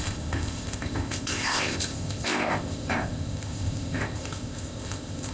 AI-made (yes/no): yes